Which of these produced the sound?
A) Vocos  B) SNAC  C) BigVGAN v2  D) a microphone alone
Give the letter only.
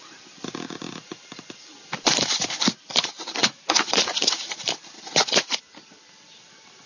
C